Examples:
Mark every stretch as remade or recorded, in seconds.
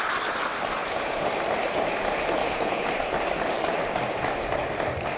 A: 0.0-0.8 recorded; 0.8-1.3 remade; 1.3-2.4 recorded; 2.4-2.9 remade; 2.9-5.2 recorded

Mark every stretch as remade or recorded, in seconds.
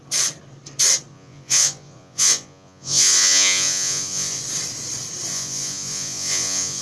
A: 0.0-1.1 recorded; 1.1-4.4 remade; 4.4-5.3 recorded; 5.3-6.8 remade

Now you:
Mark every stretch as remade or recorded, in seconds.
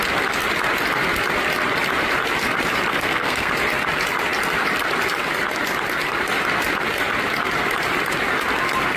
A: 0.0-2.9 recorded; 2.9-3.5 remade; 3.5-9.0 recorded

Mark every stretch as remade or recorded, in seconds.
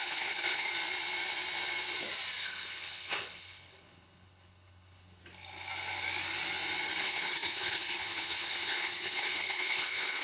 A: 0.0-0.7 remade; 0.7-2.4 recorded; 2.4-5.2 remade; 5.2-7.0 recorded; 7.0-10.2 remade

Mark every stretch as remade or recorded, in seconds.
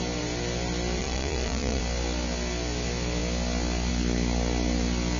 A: 0.0-1.0 recorded; 1.0-1.8 remade; 1.8-5.2 recorded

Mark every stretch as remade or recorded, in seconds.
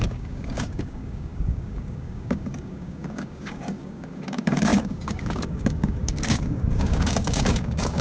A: 0.0-8.0 remade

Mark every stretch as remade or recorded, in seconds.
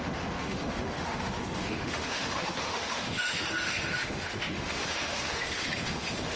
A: 0.0-6.4 remade